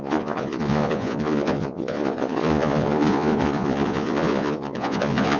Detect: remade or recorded remade